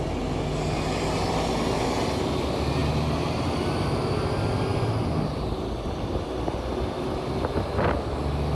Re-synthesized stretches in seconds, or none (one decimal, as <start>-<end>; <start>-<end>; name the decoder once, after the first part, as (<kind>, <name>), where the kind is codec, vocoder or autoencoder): none